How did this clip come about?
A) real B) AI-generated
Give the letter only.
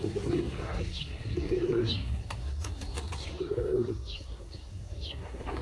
B